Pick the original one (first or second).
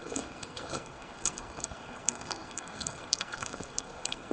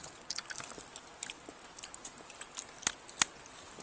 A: second